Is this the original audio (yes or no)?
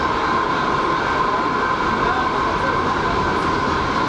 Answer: yes